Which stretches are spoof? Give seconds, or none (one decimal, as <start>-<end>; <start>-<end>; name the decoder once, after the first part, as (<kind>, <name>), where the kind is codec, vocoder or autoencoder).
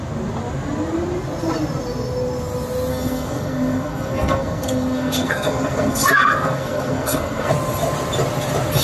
2.9-7.5 (codec, SNAC)